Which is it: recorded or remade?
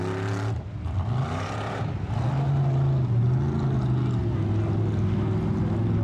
recorded